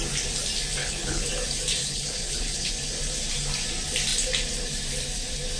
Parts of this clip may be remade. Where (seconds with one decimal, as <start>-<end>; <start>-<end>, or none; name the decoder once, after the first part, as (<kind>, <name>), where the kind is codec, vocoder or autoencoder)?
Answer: 0.8-1.3 (codec, HILCodec); 1.8-2.7